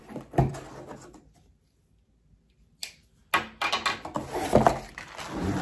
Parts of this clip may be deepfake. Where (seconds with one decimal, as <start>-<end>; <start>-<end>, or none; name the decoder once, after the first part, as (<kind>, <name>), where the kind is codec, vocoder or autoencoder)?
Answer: none